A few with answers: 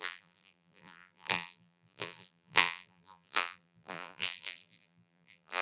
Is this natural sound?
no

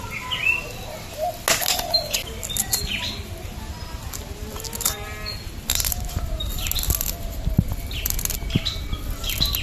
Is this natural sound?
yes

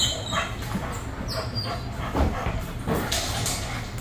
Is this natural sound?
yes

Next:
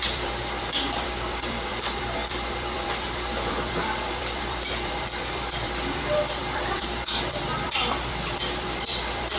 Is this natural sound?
no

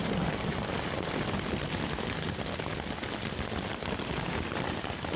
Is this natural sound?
yes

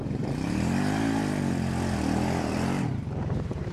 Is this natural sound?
no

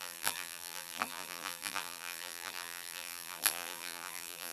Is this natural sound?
no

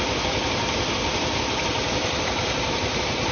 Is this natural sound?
no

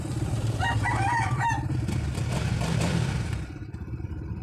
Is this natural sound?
no